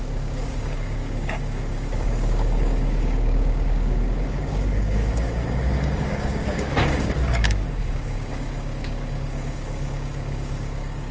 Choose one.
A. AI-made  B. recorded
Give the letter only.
A